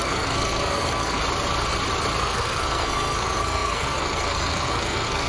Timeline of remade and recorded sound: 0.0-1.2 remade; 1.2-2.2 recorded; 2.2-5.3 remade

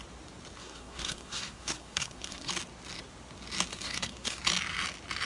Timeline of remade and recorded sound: 0.0-0.6 recorded; 0.6-2.5 remade; 2.5-3.7 recorded; 3.7-4.4 remade; 4.4-5.3 recorded

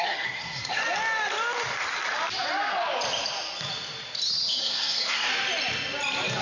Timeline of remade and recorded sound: 0.0-0.8 remade; 0.8-4.6 recorded; 4.6-5.3 remade; 5.3-6.4 recorded